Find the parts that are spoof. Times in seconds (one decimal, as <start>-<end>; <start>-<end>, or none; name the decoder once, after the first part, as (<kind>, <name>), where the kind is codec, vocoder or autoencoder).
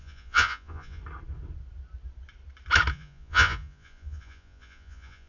0.0-1.0 (vocoder, Vocos); 2.9-5.3